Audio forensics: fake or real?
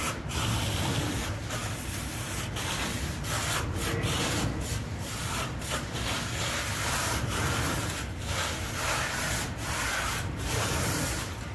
real